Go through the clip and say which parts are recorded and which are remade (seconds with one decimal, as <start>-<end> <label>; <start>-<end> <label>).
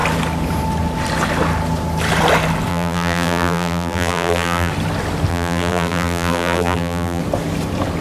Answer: 0.0-2.7 recorded; 2.7-4.7 remade; 4.7-5.3 recorded; 5.3-7.2 remade; 7.2-8.0 recorded